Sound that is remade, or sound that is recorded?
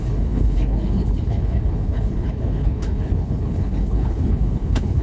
remade